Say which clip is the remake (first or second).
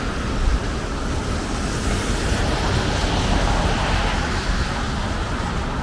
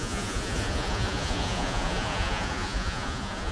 second